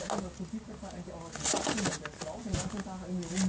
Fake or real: real